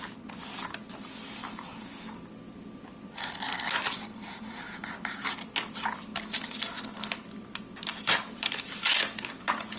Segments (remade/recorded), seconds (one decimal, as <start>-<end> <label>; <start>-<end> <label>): 0.0-9.8 recorded